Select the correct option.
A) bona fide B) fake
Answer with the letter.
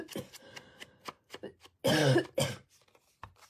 A